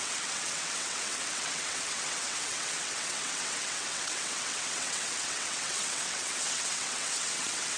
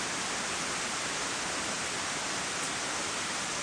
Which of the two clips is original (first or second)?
second